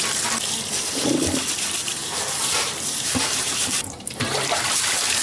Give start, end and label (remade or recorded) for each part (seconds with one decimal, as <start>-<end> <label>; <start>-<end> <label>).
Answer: 0.0-2.0 recorded; 2.0-5.2 remade